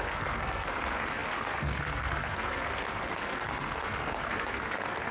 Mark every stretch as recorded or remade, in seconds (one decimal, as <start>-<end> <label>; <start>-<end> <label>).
0.0-5.1 remade